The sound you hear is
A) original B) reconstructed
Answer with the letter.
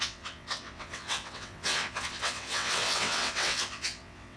B